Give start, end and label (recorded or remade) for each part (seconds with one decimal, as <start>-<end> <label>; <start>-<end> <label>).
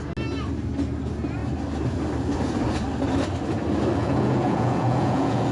0.0-4.0 recorded; 4.0-5.5 remade